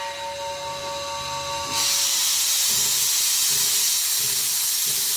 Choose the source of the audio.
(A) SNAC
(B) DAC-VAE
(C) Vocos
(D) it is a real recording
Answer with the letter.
D